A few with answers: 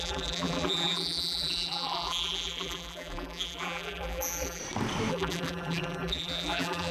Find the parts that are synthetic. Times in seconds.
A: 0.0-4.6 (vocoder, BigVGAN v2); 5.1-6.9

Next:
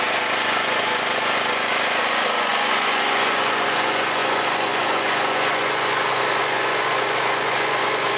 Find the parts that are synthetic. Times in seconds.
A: 0.0-8.2 (vocoder, Vocos)

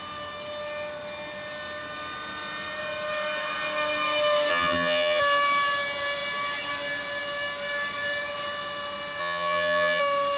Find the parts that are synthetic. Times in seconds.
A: 4.5-5.2 (vocoder, HiFi-GAN); 9.2-10.0

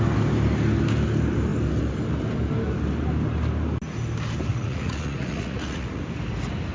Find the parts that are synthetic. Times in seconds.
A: 4.5-6.0 (vocoder, Vocos)